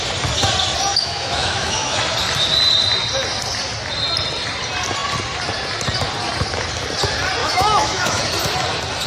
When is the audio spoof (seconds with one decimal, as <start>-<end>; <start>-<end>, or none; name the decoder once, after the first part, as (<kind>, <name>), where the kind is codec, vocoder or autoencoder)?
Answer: 0.9-2.0 (autoencoder, DAC-VAE); 7.4-8.2